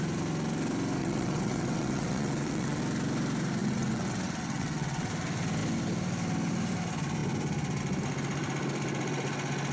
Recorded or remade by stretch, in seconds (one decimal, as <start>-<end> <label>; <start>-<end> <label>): 0.0-1.0 recorded; 1.0-2.8 remade; 2.8-3.6 recorded; 3.6-5.1 remade; 5.1-9.7 recorded